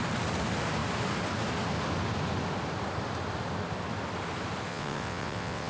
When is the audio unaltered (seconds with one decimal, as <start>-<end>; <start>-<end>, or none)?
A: 0.0-4.7

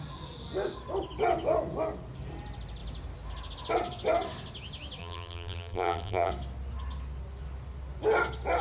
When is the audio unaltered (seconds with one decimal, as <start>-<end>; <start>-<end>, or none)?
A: 0.0-5.0; 6.3-8.6

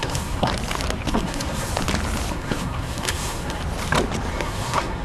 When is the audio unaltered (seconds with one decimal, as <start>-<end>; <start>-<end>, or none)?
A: 0.5-1.1; 1.7-2.3; 3.6-4.3